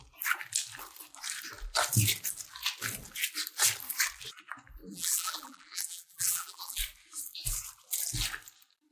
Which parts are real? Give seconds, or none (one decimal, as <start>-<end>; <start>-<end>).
0.0-4.8; 6.8-8.9

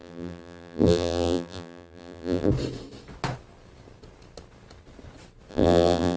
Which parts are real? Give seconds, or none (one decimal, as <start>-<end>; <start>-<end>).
2.5-5.5

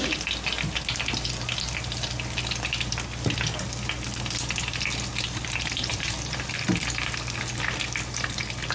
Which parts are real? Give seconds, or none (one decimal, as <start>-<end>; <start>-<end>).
0.0-5.1; 6.6-8.7

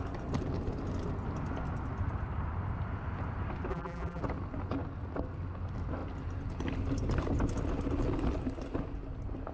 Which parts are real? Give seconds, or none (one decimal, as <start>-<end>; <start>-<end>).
0.0-3.7; 4.2-9.5

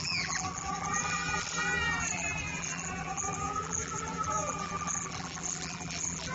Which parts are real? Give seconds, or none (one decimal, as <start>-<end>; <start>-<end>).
none